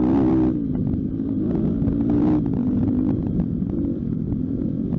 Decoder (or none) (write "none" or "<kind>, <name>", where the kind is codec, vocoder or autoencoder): vocoder, BigVGAN v2